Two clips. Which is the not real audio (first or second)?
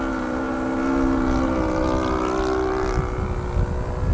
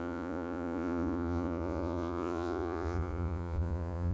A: second